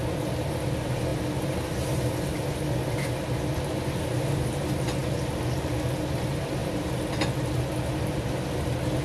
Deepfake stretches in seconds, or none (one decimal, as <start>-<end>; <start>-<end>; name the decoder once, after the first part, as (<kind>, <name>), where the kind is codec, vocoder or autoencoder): none